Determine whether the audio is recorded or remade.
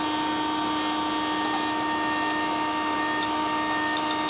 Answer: recorded